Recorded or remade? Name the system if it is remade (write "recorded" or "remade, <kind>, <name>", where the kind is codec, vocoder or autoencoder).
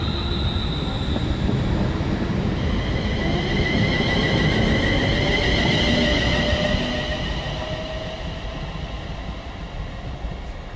recorded